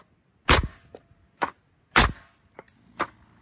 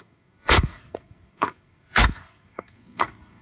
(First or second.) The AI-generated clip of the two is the second